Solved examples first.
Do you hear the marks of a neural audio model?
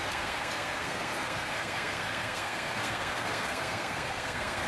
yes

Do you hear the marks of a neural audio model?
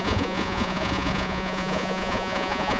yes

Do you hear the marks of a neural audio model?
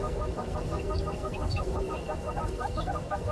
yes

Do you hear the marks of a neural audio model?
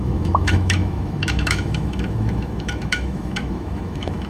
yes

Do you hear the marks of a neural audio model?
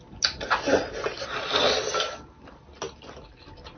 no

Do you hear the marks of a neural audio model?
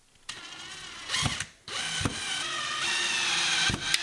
no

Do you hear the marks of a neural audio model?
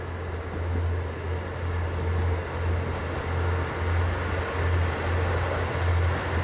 no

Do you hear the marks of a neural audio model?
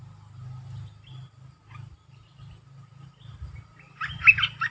no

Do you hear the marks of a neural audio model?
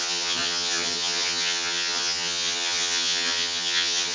yes